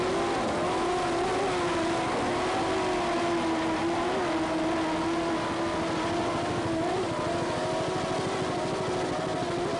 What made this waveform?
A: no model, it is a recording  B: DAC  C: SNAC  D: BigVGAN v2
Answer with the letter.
A